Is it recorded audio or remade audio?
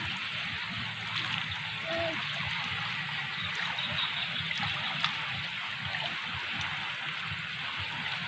recorded